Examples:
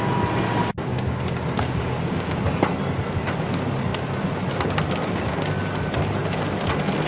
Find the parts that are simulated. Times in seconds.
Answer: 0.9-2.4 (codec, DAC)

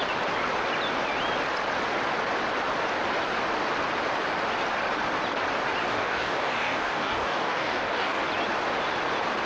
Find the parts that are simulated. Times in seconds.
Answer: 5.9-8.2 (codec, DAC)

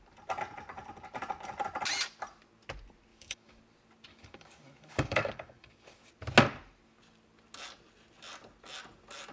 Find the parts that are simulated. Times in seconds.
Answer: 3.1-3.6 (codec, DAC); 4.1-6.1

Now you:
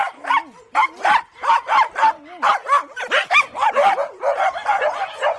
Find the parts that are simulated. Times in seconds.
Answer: none

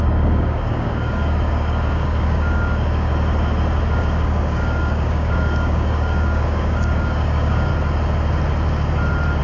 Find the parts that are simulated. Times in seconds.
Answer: 0.0-3.1 (codec, DAC); 4.0-7.7

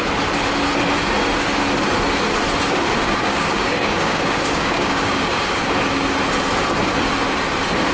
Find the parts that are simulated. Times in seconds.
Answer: 3.0-5.6 (codec, DAC)